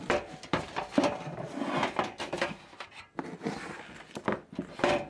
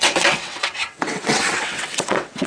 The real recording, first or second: first